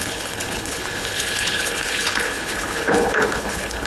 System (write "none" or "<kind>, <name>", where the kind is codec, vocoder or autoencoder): codec, HILCodec